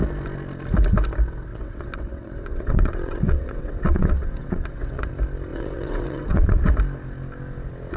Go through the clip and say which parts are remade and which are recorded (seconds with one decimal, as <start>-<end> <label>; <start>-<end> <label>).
0.0-1.5 recorded; 1.5-5.1 remade; 5.1-5.5 recorded; 5.5-6.7 remade; 6.7-8.0 recorded

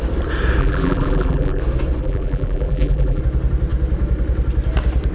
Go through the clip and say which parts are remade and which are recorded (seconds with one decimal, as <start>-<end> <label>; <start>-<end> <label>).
0.0-0.6 recorded; 0.6-1.6 remade; 1.6-2.0 recorded; 2.0-3.2 remade; 3.2-5.1 recorded

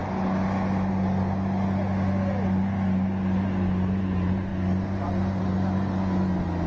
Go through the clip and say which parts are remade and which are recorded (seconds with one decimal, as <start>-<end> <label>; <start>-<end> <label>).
0.0-6.7 recorded

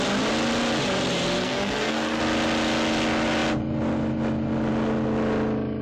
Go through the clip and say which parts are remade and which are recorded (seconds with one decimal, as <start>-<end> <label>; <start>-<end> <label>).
0.0-1.4 recorded; 1.4-2.2 remade; 2.2-5.8 recorded